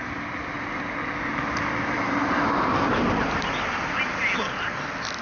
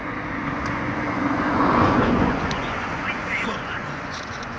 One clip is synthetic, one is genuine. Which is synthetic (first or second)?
second